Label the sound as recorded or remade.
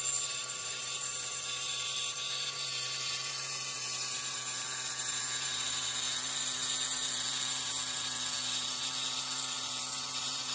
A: remade